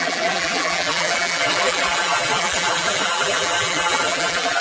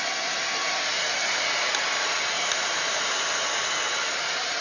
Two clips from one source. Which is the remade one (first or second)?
first